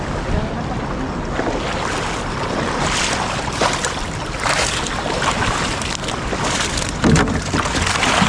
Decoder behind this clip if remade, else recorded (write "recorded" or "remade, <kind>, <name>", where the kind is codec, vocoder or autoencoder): recorded